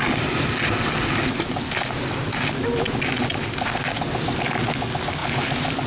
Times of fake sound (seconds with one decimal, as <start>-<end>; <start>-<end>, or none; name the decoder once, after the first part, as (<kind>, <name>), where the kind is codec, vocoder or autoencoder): none